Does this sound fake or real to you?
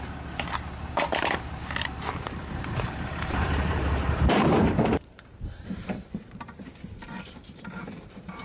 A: fake